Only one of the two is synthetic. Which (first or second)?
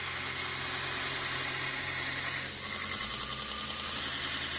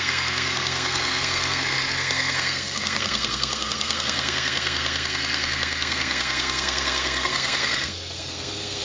second